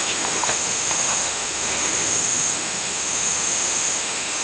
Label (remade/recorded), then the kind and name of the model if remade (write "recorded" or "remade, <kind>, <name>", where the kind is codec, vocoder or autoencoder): remade, autoencoder, DAC-VAE